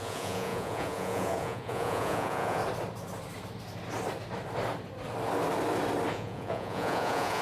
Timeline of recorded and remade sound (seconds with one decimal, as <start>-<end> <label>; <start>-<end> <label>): 0.0-2.6 remade; 2.6-6.1 recorded; 6.1-7.4 remade